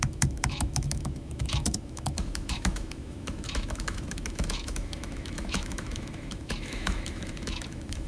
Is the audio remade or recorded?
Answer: remade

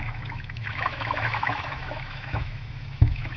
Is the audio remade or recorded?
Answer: remade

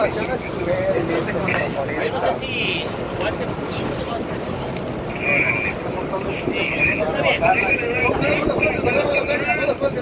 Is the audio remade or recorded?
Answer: recorded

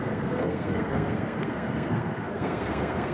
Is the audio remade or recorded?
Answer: remade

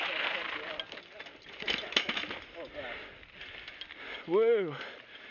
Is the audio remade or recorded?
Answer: recorded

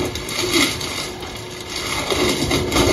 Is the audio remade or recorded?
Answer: recorded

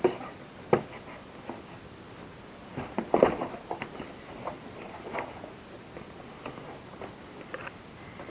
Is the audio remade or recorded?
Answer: recorded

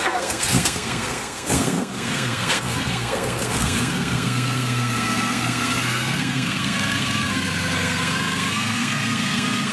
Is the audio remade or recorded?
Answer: remade